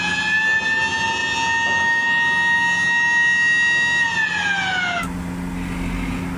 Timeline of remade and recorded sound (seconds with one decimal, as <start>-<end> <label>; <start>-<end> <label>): 0.0-6.4 recorded